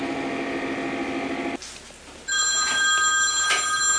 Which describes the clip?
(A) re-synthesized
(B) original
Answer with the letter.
B